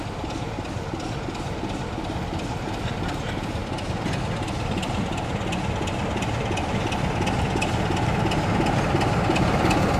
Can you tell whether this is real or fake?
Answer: real